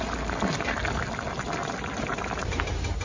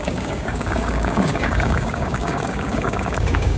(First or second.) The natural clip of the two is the first